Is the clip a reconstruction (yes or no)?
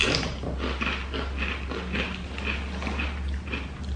no